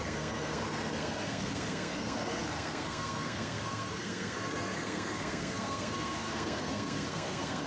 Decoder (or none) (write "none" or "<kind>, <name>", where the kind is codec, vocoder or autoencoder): codec, SNAC